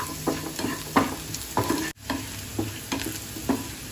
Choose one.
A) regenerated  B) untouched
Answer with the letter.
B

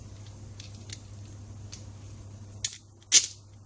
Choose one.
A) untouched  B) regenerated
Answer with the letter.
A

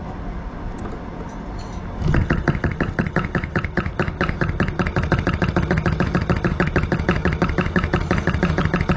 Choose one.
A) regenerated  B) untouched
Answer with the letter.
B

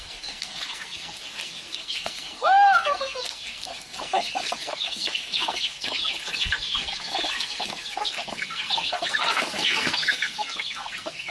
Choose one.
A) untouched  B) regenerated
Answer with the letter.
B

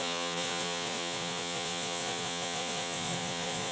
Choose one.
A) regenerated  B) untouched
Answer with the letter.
A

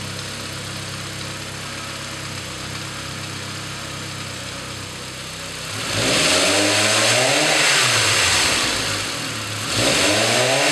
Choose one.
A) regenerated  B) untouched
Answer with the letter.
B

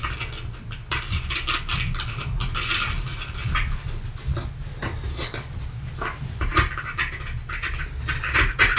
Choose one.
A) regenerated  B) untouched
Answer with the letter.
B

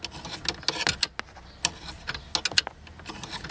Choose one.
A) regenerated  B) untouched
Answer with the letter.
B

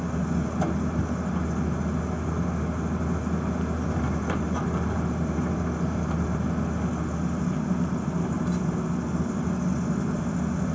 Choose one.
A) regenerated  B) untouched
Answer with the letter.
B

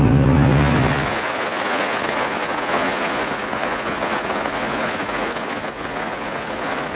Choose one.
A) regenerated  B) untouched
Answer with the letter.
A